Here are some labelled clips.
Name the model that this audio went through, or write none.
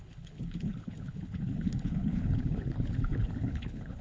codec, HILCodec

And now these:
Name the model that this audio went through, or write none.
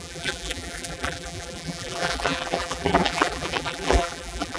vocoder, BigVGAN v2